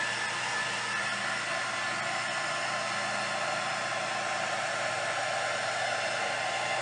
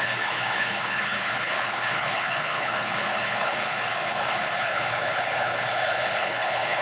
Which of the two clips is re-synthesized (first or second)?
second